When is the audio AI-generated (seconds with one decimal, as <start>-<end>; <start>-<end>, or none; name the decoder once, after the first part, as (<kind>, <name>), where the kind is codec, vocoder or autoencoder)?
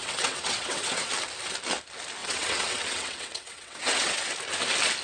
0.0-1.1 (vocoder, WaveNeXt); 2.2-4.3